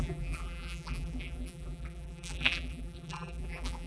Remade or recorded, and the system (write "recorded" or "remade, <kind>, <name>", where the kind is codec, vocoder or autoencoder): remade, vocoder, BigVGAN v2